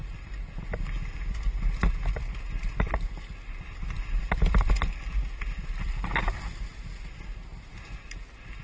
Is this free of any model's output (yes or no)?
yes